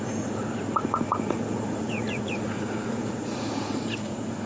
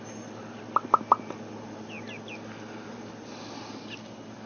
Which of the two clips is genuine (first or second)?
second